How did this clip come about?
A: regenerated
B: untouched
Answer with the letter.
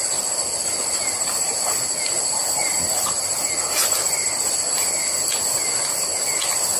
B